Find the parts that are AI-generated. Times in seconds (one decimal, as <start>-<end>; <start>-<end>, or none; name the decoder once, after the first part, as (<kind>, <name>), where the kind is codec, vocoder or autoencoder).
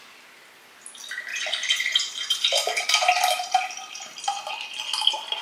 1.3-4.5 (vocoder, BigVGAN v2)